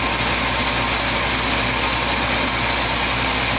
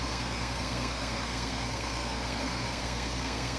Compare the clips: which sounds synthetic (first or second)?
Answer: second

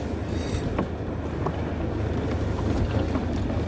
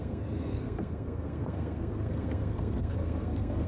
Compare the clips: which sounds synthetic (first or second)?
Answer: second